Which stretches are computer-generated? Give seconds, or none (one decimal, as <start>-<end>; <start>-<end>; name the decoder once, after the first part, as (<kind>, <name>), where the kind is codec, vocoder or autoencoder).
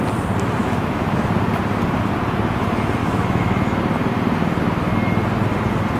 0.6-1.2 (autoencoder, DAC-VAE); 3.0-3.8